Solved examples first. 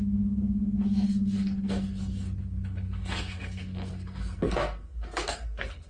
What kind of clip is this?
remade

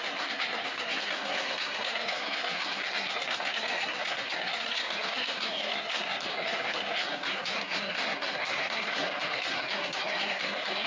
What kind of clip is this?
remade